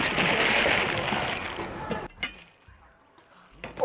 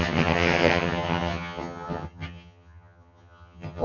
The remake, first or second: second